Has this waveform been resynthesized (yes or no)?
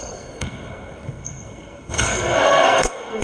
yes